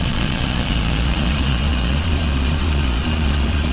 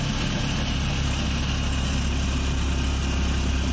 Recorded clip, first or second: second